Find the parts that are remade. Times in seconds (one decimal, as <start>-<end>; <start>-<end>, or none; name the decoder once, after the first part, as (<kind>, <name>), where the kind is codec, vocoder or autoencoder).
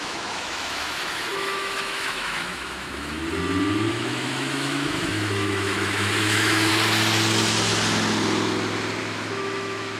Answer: 0.0-3.2 (autoencoder, DAC-VAE); 3.9-6.7; 9.0-10.0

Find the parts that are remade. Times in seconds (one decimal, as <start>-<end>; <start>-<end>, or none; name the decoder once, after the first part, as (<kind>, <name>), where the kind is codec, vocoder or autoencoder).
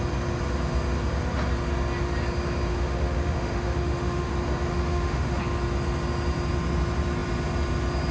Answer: 2.7-4.3 (autoencoder, DAC-VAE); 4.7-5.4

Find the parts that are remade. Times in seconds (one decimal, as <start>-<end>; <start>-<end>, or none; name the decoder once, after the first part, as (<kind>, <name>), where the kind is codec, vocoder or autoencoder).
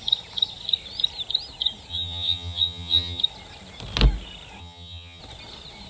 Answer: 1.9-3.2 (vocoder, HiFi-GAN); 4.6-5.2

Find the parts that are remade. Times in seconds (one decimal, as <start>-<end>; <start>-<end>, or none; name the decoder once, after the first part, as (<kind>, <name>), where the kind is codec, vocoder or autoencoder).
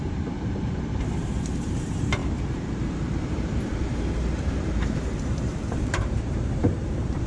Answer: 0.0-7.3 (vocoder, BigVGAN v2)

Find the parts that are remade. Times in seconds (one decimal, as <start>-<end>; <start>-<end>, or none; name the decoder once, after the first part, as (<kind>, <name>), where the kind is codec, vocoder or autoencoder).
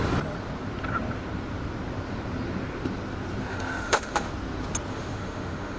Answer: 3.5-4.3 (autoencoder, DAC-VAE); 4.9-5.8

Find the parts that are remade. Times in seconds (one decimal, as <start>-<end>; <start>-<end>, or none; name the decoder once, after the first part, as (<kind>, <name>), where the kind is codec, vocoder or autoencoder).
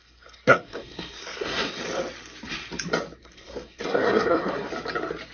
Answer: 0.0-1.8 (codec, SNAC); 3.2-4.7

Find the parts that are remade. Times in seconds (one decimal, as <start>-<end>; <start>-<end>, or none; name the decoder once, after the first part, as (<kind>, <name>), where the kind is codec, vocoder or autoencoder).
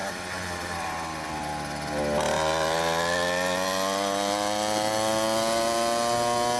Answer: 0.0-1.3 (vocoder, BigVGAN v2)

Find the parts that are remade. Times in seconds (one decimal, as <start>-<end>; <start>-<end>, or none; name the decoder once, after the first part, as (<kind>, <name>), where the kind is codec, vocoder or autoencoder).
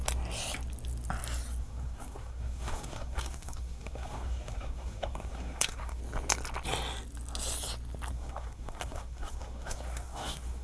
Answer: 1.6-6.0 (codec, SNAC); 8.1-10.6